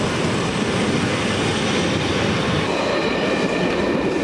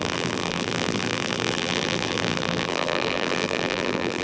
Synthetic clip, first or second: second